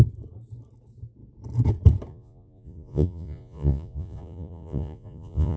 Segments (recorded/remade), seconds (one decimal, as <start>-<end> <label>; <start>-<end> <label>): 0.0-2.1 recorded; 2.1-5.6 remade